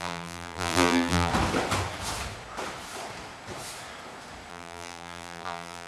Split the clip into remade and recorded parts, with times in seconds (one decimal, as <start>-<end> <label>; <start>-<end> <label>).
0.0-1.3 remade; 1.3-4.5 recorded; 4.5-5.9 remade